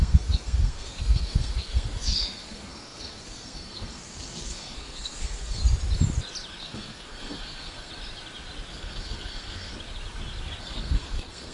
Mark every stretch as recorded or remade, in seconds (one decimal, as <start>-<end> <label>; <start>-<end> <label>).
0.0-5.6 remade; 5.6-6.6 recorded; 6.6-7.9 remade; 7.9-8.7 recorded; 8.7-9.7 remade; 9.7-10.6 recorded; 10.6-11.5 remade